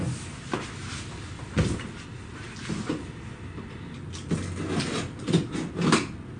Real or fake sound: real